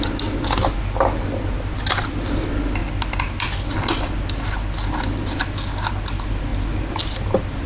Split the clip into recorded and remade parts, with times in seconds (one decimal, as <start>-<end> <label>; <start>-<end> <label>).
0.0-7.7 recorded